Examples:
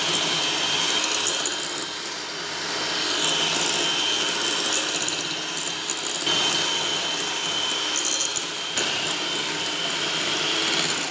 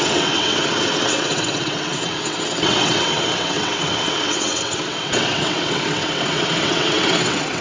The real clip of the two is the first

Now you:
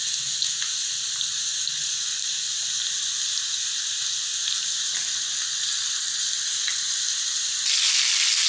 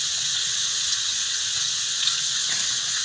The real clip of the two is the first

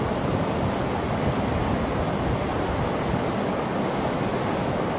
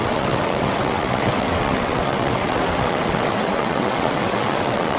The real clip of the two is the first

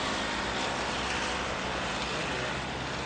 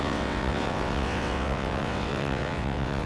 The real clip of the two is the first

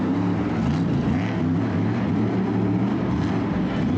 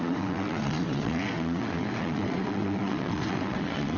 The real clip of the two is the first